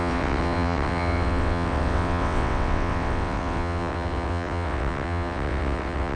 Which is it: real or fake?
fake